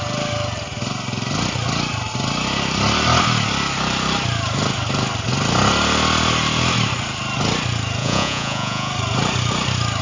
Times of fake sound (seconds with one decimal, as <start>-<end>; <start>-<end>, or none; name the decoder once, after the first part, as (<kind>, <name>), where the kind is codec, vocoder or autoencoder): 8.0-8.9 (vocoder, Vocos)